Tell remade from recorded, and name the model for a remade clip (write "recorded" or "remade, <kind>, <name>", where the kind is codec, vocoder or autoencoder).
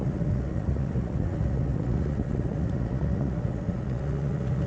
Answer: remade, vocoder, Vocos